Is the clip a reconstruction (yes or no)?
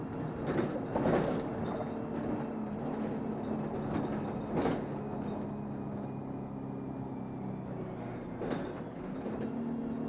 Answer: no